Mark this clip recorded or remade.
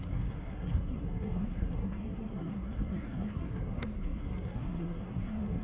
remade